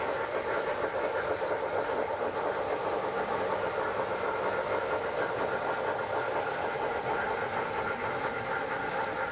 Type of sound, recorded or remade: recorded